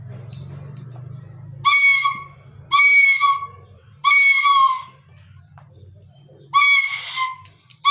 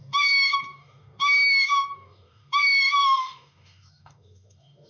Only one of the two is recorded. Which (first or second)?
first